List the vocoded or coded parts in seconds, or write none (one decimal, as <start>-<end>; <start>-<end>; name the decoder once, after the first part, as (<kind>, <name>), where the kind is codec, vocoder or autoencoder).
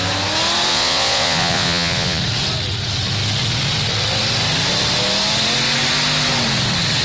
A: 0.7-2.2 (vocoder, Vocos)